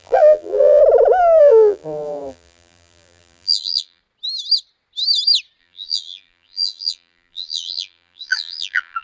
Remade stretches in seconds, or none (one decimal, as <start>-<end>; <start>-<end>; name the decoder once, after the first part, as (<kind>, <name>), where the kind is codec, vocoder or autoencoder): 0.0-0.8 (vocoder, BigVGAN v2); 1.4-4.0; 5.6-9.0